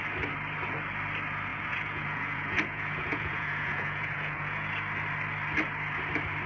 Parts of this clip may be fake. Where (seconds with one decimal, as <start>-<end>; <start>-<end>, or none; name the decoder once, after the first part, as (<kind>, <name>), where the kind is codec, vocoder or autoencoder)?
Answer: 1.5-4.7 (vocoder, Vocos)